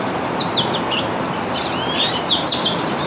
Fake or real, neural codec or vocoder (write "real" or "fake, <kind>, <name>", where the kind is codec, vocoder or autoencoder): fake, vocoder, BigVGAN v2